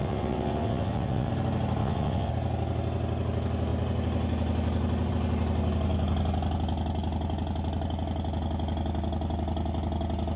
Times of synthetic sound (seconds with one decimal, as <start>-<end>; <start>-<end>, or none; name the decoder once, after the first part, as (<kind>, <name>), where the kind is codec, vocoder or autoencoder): 0.0-1.3 (vocoder, WaveNeXt); 1.8-2.3